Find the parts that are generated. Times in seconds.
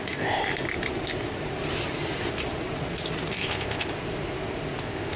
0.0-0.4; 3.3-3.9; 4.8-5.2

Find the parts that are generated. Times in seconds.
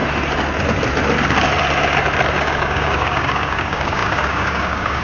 2.4-5.0